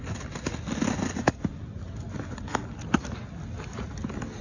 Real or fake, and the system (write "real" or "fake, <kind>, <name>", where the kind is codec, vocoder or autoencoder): real